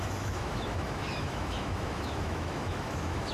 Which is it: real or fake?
fake